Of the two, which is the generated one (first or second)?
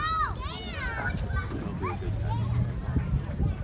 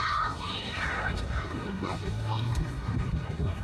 second